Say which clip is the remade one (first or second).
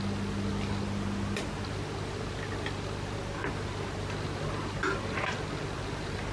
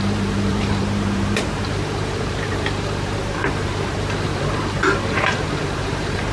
second